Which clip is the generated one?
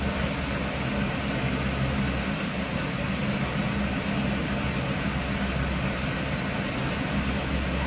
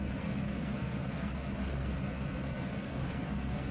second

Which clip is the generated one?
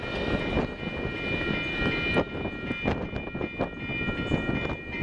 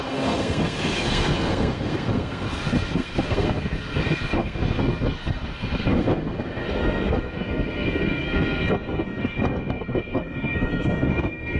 second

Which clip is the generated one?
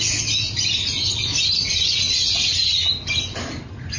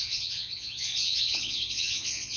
second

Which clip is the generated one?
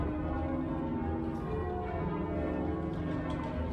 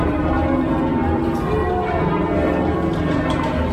second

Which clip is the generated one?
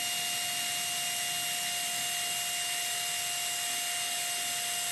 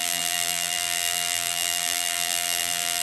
second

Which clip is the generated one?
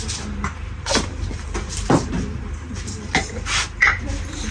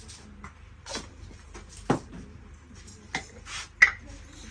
first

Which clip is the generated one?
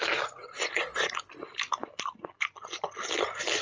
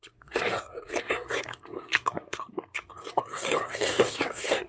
second